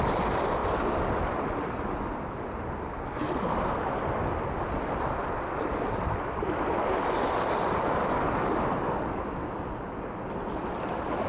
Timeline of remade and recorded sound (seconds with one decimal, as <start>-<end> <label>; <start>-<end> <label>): 0.0-11.3 recorded